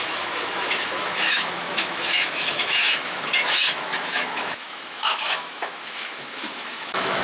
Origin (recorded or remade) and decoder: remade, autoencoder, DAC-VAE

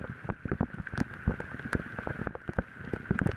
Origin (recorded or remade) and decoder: recorded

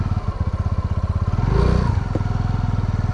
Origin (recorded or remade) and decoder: recorded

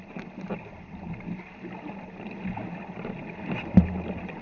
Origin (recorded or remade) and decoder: recorded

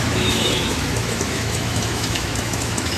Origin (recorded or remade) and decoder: remade, autoencoder, DAC-VAE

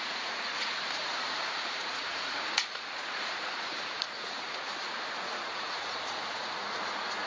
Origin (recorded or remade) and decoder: remade, vocoder, Vocos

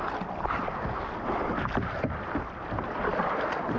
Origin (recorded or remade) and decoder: recorded